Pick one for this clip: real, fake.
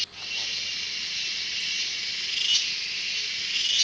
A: real